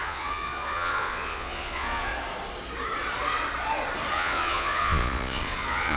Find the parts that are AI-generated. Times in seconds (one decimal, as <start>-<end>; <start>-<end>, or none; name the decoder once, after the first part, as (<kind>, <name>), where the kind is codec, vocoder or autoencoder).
0.0-2.1 (vocoder, Vocos); 4.1-6.0

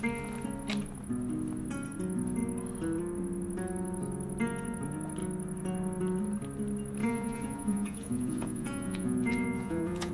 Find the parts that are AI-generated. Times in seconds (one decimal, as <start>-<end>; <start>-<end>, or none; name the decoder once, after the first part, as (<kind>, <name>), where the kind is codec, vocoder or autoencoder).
7.0-10.1 (vocoder, Vocos)

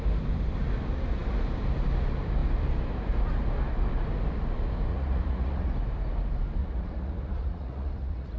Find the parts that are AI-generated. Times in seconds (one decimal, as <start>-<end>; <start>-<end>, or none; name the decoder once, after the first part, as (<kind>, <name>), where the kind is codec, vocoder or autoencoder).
4.9-5.7 (vocoder, Vocos); 6.6-8.4

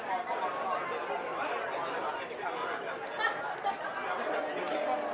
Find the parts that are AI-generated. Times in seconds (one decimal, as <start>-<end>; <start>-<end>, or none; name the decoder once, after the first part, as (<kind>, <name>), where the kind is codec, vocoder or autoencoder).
none

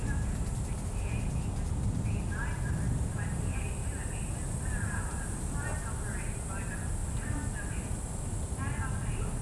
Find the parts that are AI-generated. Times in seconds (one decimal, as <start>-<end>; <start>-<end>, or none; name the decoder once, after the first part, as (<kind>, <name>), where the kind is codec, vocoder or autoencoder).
none

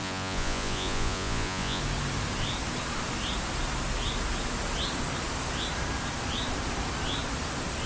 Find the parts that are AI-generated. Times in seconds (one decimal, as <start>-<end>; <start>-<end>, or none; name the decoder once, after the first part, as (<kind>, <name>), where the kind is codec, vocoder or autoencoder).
0.0-1.8 (vocoder, Vocos)

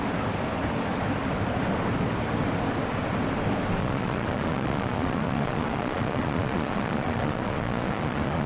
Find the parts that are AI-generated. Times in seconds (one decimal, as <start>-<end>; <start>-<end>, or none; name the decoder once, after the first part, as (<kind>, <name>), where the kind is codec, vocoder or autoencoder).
3.8-8.5 (vocoder, Vocos)